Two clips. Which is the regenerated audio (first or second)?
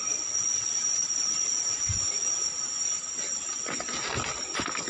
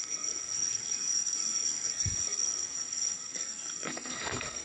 second